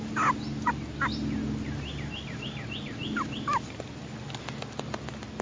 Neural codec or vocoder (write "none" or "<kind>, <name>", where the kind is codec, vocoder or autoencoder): none